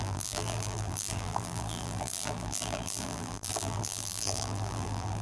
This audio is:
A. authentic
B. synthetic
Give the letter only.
B